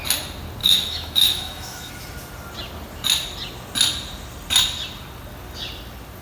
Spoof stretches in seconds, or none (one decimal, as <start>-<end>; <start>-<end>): 0.6-1.9